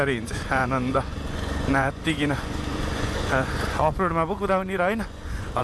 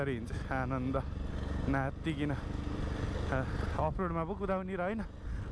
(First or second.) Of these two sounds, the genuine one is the second